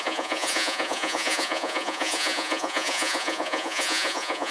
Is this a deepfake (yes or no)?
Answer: yes